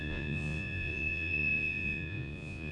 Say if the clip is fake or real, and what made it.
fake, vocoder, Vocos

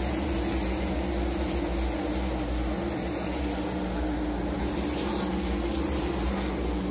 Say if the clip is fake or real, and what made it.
real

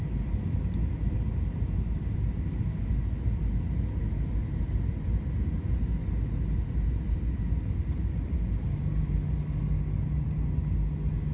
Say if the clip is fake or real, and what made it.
real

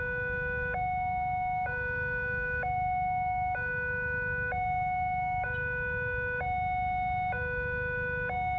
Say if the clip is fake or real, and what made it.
real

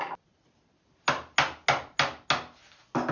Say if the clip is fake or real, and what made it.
real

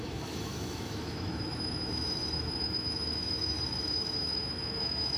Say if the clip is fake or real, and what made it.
fake, autoencoder, DAC-VAE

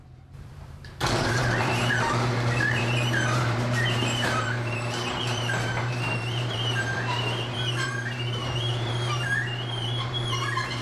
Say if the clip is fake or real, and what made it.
fake, vocoder, BigVGAN v2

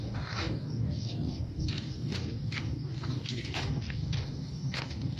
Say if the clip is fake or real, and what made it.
fake, codec, DAC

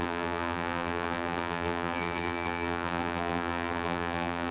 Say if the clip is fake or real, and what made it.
fake, vocoder, BigVGAN v2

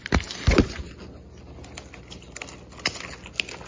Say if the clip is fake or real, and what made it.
real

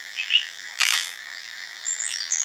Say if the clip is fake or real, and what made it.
fake, vocoder, BigVGAN v2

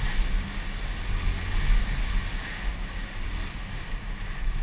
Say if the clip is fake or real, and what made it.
real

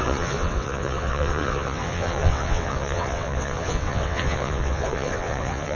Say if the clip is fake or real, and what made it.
fake, vocoder, WaveNeXt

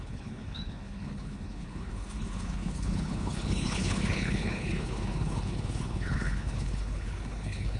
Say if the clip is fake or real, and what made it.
fake, codec, HILCodec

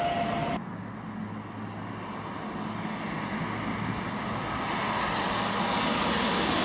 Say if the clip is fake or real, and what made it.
real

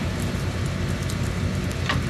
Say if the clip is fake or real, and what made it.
real